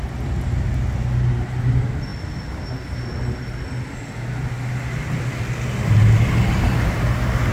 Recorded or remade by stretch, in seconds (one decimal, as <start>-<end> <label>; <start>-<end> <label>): 0.0-7.5 recorded